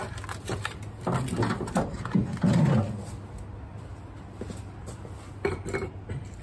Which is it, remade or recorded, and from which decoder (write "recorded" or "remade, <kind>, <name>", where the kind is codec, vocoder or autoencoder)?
recorded